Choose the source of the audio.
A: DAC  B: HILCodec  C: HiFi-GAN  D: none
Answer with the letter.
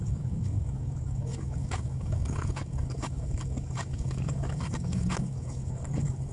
A